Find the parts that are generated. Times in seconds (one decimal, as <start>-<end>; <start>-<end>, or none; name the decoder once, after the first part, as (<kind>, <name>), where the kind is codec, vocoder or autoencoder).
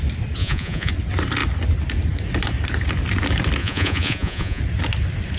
0.4-0.9 (vocoder, Vocos); 3.6-4.6